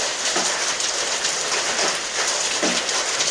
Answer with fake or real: fake